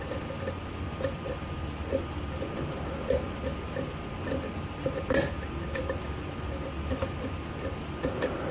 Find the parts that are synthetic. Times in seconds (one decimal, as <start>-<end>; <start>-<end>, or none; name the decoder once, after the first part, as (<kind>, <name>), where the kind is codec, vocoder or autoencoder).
none